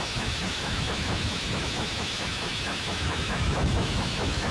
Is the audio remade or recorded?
remade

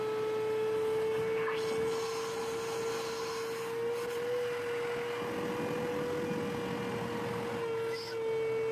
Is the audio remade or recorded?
recorded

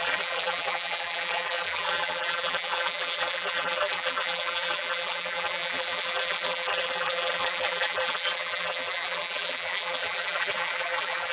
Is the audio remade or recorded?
remade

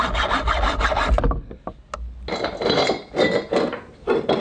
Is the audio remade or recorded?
recorded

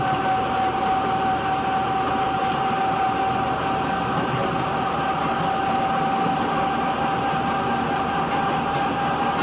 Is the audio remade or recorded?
recorded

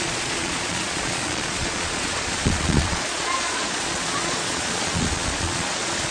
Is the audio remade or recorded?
remade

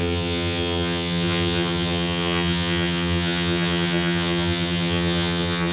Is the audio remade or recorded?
remade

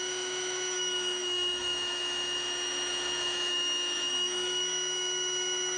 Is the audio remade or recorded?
remade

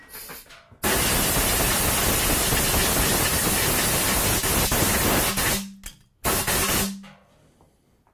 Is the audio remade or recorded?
recorded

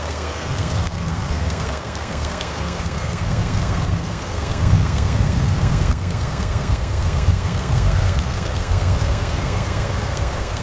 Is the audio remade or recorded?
remade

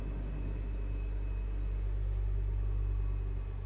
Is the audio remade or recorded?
recorded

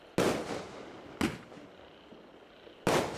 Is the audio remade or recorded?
recorded